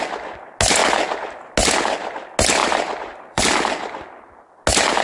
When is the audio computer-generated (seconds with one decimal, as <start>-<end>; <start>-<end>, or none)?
2.6-3.4

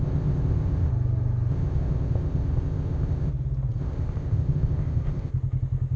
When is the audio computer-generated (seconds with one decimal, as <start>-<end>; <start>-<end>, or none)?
0.0-0.9; 1.5-3.3; 3.8-5.3

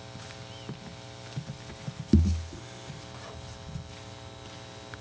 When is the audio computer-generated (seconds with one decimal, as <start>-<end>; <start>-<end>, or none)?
none

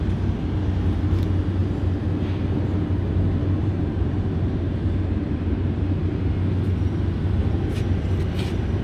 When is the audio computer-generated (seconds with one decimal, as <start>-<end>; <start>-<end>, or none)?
3.6-6.0

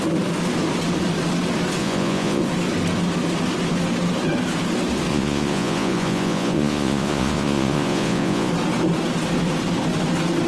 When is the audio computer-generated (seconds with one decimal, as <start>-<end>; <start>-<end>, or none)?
1.8-2.4; 5.1-8.5

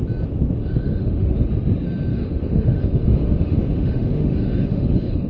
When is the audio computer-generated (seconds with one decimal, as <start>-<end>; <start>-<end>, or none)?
0.6-1.5; 2.1-5.3

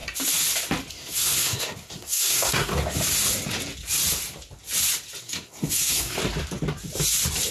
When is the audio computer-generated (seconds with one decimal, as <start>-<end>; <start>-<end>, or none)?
0.9-2.7; 5.2-6.2